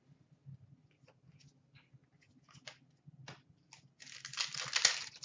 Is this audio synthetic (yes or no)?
no